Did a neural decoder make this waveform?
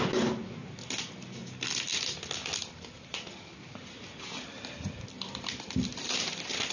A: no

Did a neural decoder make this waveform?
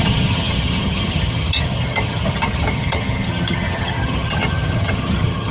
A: yes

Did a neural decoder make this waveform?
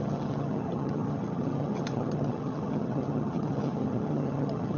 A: yes